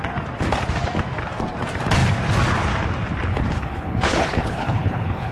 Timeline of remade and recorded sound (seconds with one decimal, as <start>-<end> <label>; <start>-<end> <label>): 0.0-3.3 recorded; 3.3-5.3 remade